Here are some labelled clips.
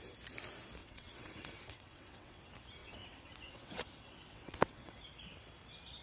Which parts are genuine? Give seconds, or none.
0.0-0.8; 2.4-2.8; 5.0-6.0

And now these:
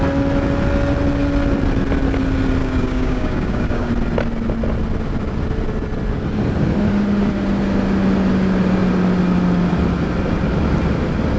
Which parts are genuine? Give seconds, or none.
0.0-2.6; 3.9-11.4

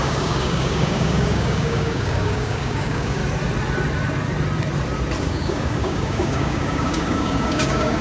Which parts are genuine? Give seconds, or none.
3.2-5.2

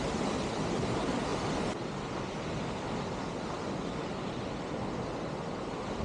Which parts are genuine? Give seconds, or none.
0.0-6.0